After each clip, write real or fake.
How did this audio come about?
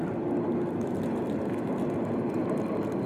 real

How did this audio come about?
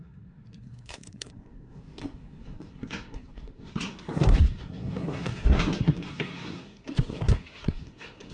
fake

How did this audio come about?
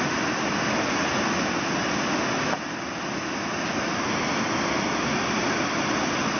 real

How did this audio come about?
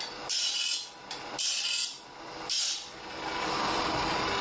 real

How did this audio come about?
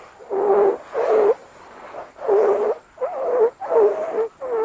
real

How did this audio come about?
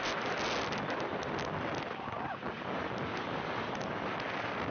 real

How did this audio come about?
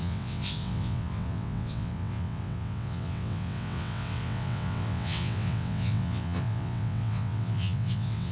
fake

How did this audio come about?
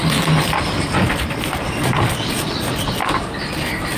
real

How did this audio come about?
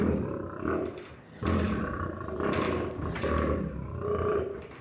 fake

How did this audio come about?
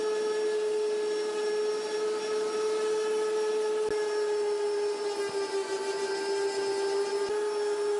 real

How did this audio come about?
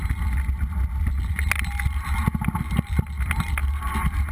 real